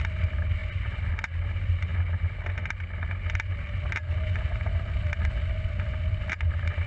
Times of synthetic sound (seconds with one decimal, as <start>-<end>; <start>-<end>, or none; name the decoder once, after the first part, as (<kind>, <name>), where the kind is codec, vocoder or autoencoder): 0.6-1.1 (vocoder, BigVGAN v2)